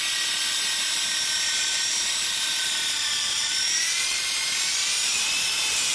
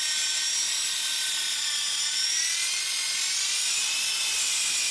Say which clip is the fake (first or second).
first